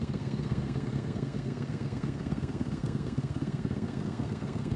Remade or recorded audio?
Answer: remade